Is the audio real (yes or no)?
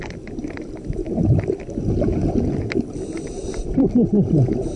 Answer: yes